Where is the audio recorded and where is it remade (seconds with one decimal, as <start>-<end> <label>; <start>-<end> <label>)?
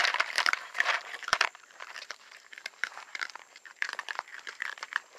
0.0-4.3 remade; 4.3-5.2 recorded